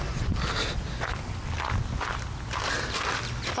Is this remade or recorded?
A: recorded